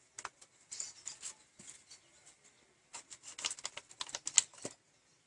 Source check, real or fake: real